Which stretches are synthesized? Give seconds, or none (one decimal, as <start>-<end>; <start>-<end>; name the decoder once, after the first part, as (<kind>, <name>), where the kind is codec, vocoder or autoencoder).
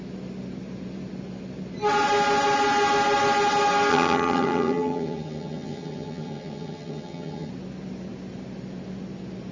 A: 3.9-7.5 (vocoder, HiFi-GAN)